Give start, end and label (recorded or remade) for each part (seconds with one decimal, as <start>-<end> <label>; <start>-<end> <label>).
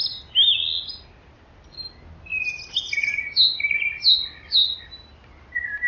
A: 0.0-5.9 recorded